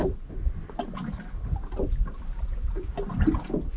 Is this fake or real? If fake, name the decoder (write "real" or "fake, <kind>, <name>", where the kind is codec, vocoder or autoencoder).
real